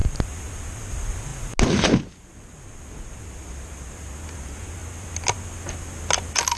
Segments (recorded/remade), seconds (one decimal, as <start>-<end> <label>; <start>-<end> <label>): 0.0-6.6 recorded